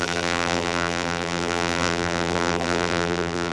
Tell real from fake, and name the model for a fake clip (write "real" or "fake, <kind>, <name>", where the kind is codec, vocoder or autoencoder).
fake, vocoder, BigVGAN v2